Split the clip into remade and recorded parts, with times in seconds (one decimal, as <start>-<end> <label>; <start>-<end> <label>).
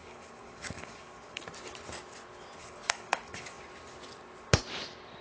0.0-1.4 remade; 1.4-2.6 recorded; 2.6-3.6 remade; 3.6-5.2 recorded